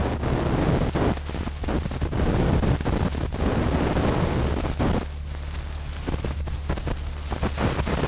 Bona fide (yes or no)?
yes